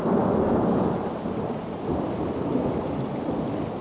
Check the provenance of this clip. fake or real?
real